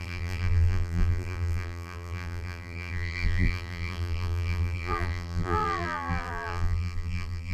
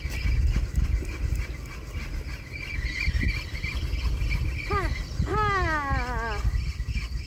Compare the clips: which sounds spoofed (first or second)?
first